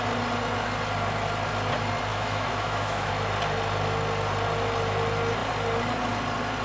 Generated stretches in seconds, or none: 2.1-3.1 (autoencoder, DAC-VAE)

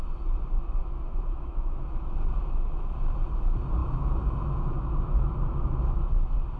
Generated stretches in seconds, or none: 0.8-2.9 (autoencoder, DAC-VAE); 3.8-5.4